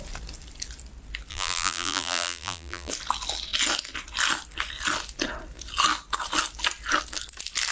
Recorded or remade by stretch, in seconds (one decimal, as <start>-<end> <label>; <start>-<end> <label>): 0.0-1.3 recorded; 1.3-2.9 remade; 2.9-7.7 recorded